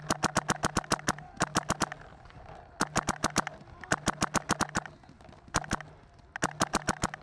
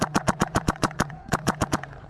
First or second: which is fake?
second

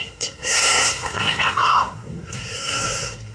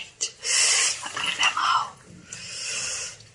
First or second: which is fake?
first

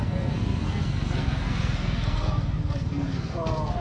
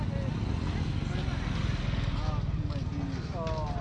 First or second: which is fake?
first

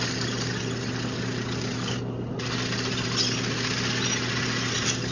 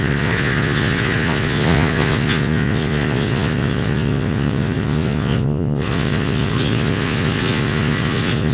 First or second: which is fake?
second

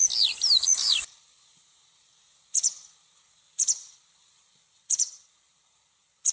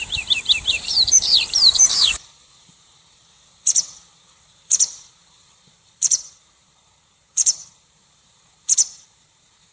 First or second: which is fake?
second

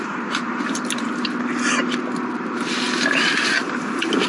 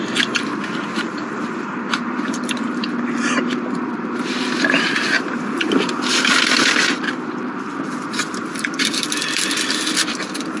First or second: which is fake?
second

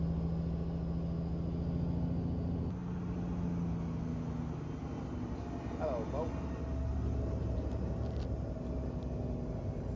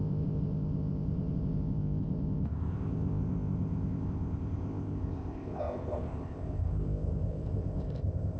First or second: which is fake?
second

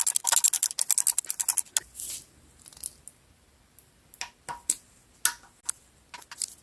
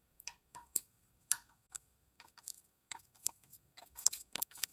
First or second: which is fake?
second